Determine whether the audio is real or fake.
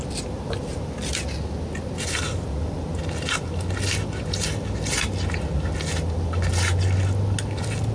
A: real